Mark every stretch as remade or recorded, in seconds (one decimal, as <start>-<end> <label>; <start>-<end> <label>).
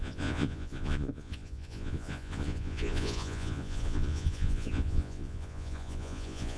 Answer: 0.0-6.6 remade